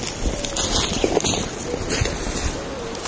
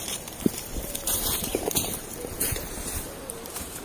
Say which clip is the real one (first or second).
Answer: first